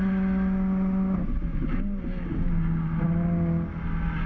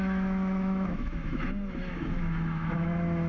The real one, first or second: first